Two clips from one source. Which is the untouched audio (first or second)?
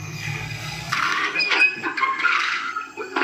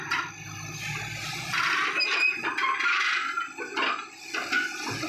second